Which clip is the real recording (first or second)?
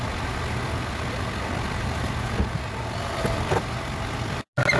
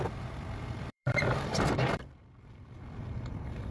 first